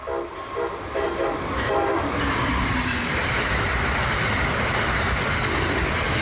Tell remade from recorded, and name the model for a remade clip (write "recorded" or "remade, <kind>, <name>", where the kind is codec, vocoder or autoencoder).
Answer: recorded